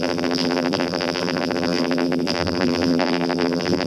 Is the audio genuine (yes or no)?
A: no